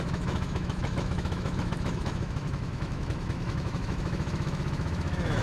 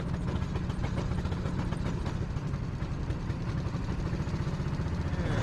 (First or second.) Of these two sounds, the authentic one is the second